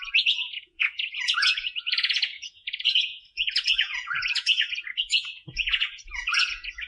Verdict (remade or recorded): remade